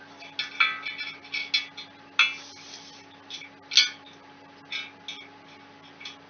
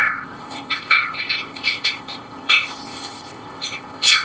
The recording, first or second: first